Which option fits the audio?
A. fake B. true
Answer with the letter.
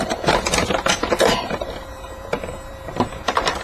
A